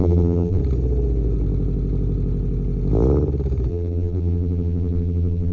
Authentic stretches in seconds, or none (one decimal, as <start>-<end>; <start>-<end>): 0.6-3.7